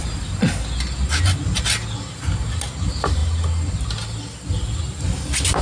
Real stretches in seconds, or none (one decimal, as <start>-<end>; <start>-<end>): 0.0-5.6